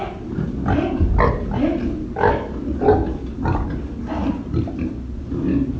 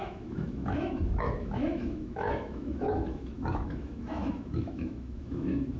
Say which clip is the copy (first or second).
second